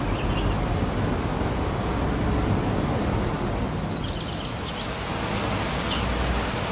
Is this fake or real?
real